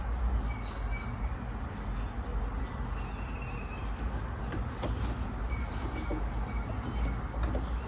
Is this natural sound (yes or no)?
yes